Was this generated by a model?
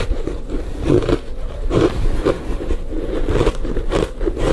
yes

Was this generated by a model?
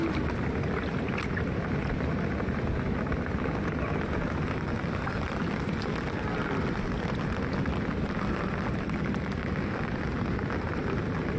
no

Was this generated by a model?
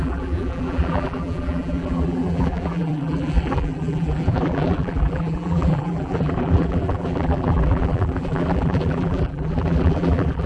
yes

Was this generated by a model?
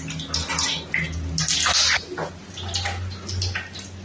no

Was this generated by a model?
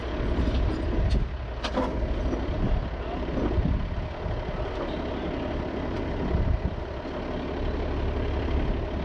no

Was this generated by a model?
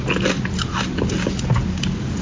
no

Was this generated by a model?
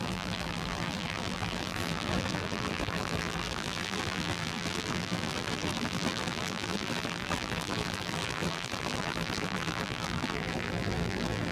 yes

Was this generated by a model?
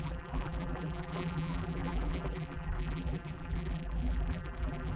yes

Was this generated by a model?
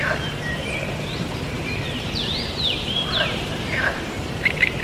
yes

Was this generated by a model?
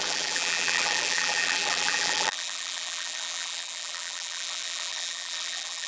yes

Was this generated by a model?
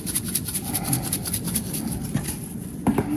no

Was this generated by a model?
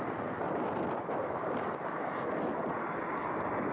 no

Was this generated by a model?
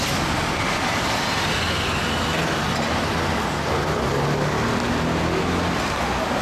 no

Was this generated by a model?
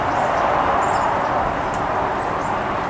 no